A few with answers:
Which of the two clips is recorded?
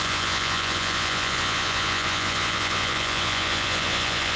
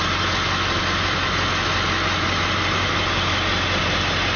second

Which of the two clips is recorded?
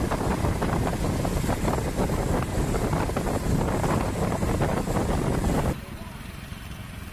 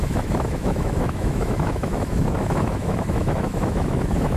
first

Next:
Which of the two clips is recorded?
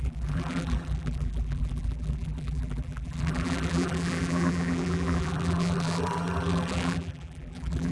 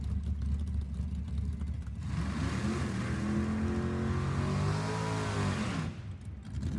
second